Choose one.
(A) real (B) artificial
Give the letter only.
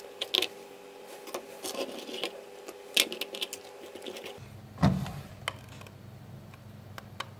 A